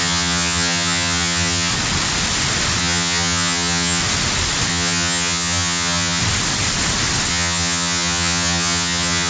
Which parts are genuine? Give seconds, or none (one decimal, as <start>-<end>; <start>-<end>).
1.7-2.8; 4.0-4.7; 6.2-7.3